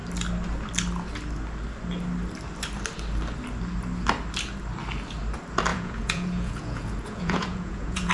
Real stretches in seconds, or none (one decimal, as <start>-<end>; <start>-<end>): 0.0-5.7